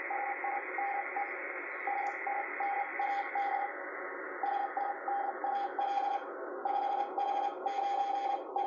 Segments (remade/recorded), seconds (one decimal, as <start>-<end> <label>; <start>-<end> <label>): 0.0-8.7 recorded